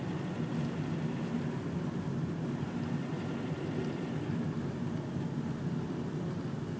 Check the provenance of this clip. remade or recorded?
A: recorded